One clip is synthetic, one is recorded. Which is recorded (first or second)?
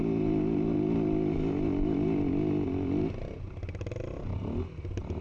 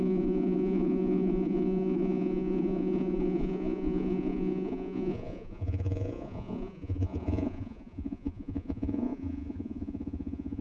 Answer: first